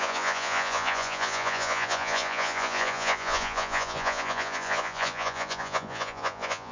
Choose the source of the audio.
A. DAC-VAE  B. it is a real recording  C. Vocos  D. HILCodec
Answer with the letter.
C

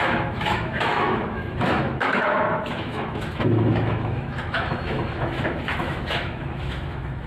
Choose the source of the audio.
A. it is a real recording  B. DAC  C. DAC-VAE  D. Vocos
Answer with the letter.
C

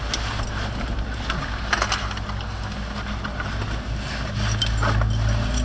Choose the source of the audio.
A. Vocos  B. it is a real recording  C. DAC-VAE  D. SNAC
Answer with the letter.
B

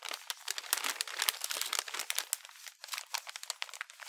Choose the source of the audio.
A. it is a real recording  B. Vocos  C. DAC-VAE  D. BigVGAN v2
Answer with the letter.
A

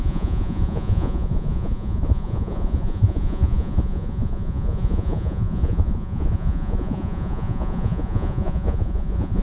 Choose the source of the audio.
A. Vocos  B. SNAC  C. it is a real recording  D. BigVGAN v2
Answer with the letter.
A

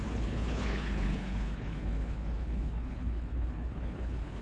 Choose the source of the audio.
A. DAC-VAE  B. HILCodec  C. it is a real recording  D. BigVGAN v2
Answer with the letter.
B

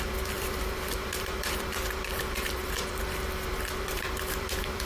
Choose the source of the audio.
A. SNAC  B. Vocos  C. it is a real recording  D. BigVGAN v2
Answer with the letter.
D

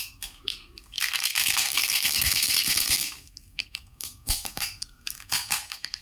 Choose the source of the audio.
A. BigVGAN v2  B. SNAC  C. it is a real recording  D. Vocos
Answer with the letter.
B